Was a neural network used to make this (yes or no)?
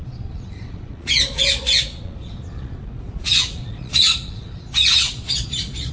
yes